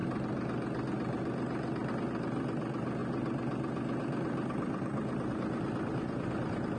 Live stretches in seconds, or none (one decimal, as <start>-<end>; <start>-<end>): 0.0-1.9; 3.0-4.0